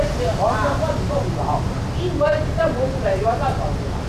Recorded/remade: recorded